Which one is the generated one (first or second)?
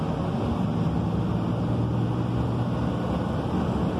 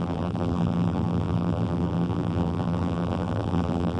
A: second